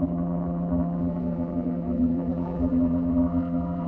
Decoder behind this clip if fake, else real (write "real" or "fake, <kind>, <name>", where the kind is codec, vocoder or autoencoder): fake, vocoder, BigVGAN v2